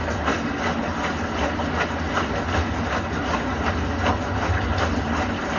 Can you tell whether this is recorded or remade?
recorded